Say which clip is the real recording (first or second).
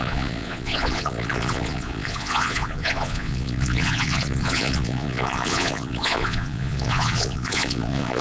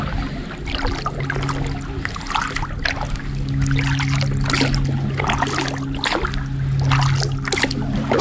second